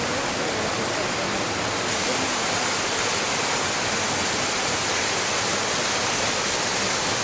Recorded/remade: recorded